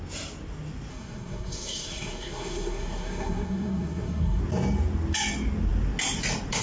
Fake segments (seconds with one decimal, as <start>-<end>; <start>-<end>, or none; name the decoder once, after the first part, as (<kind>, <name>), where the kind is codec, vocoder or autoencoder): 0.9-4.4 (codec, SNAC)